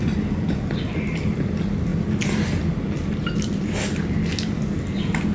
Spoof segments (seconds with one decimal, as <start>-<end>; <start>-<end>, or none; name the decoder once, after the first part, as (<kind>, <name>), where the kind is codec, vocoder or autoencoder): none